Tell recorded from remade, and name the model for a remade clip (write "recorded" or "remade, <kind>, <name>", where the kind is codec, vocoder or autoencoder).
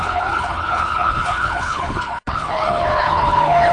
remade, codec, HILCodec